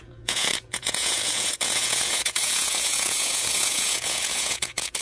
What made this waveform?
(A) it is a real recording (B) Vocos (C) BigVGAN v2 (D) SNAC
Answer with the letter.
B